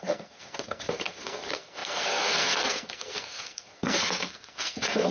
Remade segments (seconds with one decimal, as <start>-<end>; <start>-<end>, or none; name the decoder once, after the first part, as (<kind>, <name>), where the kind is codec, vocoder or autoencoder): 0.0-5.1 (codec, SNAC)